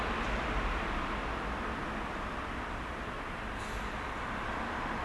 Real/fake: fake